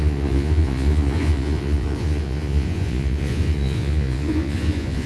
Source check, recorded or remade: remade